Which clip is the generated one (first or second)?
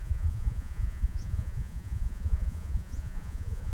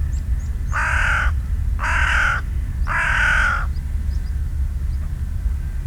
first